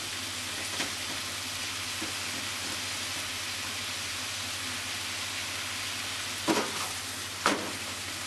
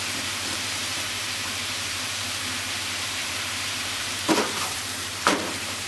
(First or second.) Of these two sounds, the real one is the first